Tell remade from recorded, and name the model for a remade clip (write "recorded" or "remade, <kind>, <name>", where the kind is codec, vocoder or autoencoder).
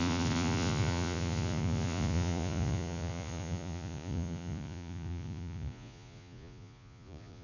remade, vocoder, Vocos